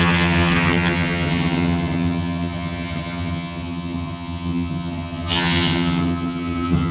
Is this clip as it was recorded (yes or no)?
no